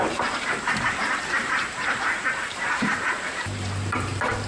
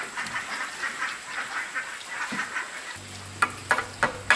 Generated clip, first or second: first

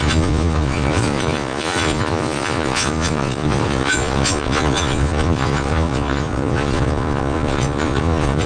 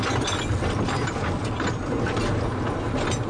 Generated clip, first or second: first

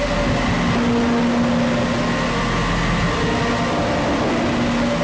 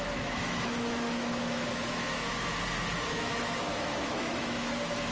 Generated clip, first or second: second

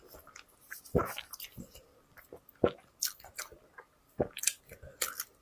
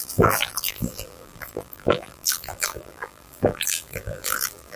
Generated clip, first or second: second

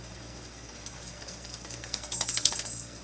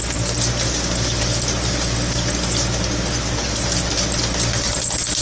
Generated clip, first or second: first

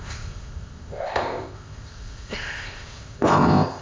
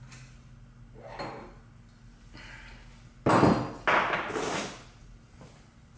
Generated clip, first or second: first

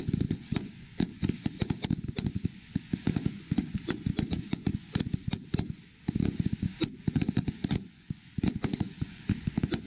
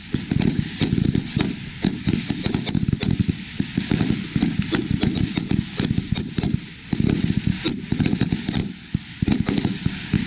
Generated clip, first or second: first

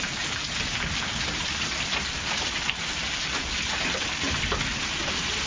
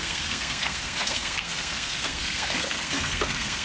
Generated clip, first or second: second